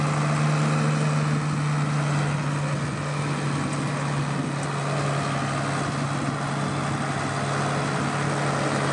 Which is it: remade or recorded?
recorded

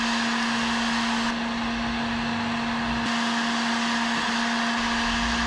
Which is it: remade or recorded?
recorded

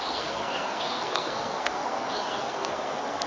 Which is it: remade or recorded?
remade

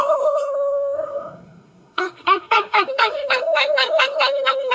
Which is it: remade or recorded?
remade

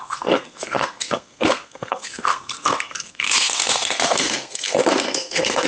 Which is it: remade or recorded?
remade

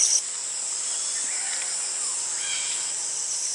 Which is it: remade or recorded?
recorded